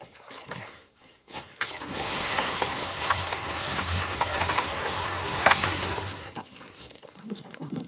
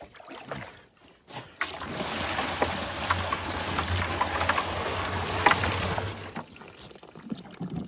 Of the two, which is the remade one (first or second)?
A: first